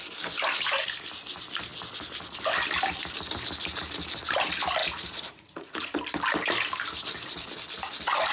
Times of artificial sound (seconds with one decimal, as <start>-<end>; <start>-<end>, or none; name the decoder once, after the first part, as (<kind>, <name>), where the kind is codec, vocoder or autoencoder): 4.8-5.9 (vocoder, Vocos)